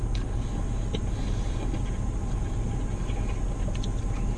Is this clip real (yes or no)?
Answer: yes